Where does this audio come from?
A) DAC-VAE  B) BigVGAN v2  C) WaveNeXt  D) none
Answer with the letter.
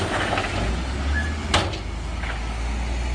D